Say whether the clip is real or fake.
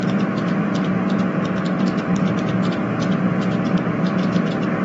real